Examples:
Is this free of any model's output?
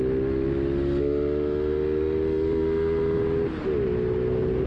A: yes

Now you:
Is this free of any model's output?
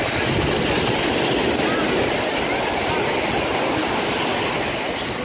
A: yes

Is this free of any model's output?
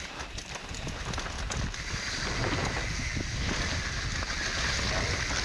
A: yes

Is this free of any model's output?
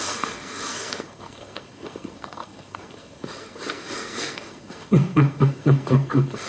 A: no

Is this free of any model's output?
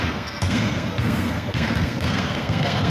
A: no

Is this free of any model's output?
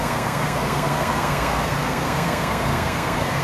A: no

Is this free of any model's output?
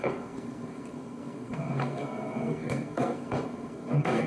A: no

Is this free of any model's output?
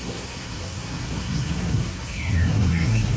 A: no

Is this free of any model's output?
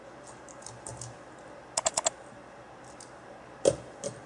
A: yes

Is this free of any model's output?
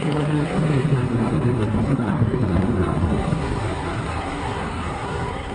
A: no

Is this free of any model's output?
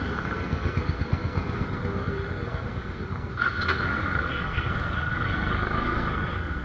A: no